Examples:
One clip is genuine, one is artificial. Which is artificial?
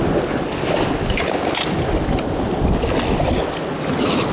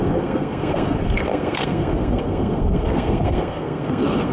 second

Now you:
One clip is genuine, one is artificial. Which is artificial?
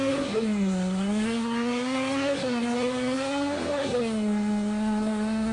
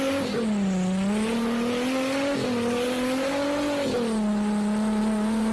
first